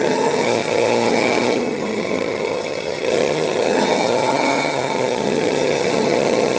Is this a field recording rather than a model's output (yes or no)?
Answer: no